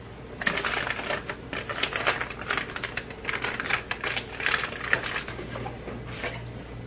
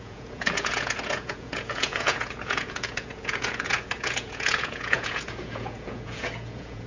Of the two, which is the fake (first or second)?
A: second